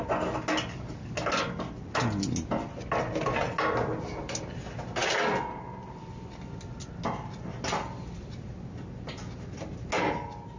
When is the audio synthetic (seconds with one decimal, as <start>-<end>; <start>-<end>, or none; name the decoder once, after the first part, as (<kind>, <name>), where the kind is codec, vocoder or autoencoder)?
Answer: none